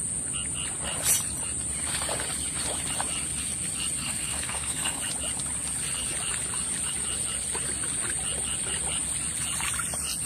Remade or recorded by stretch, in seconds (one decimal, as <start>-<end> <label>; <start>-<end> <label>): 0.0-4.0 recorded; 4.0-5.0 remade; 5.0-10.3 recorded